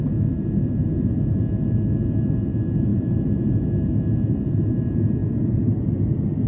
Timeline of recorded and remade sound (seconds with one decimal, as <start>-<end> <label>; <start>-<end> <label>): 0.0-0.8 recorded; 0.8-1.4 remade; 1.4-2.9 recorded; 2.9-3.6 remade; 3.6-5.2 recorded; 5.2-5.9 remade; 5.9-6.5 recorded